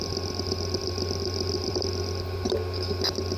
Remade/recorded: remade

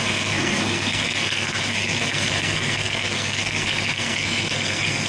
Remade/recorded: remade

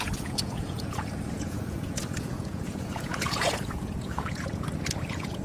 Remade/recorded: remade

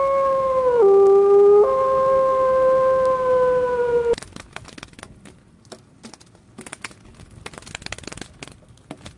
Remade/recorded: recorded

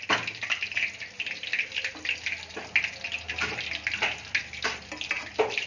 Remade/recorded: recorded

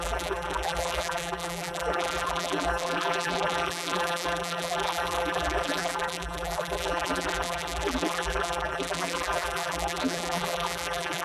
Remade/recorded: remade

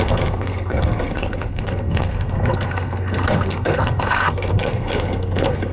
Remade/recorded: remade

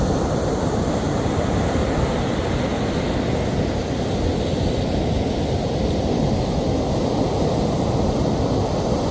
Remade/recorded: recorded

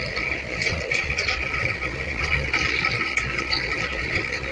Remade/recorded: remade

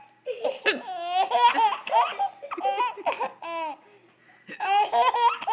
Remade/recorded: recorded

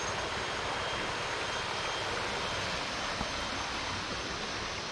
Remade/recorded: recorded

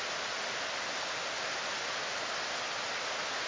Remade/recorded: recorded